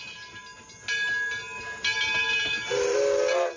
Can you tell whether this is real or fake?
real